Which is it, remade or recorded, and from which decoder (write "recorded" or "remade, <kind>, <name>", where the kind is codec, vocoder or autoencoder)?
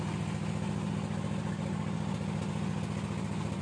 recorded